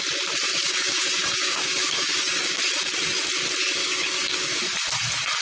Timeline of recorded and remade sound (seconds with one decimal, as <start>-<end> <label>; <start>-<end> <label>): 0.0-0.5 recorded; 0.5-2.6 remade; 2.6-3.8 recorded; 3.8-4.6 remade; 4.6-5.4 recorded